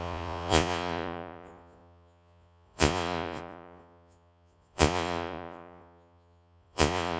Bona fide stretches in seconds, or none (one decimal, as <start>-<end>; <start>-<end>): none